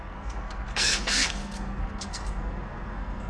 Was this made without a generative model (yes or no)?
no